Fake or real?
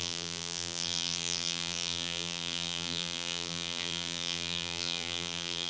fake